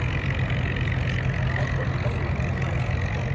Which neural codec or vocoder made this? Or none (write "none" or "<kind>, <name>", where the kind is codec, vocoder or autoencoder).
none